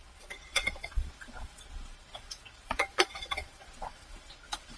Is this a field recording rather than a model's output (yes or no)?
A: no